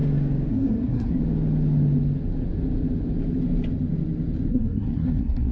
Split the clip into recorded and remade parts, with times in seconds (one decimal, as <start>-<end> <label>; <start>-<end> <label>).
0.0-0.5 recorded; 0.5-1.2 remade; 1.2-4.5 recorded; 4.5-5.5 remade